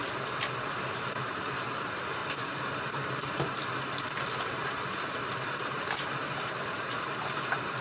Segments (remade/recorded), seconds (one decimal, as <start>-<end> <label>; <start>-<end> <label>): 0.0-2.2 remade; 2.2-3.3 recorded; 3.3-7.8 remade